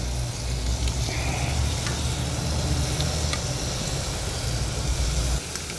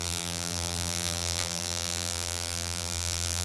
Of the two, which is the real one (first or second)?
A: first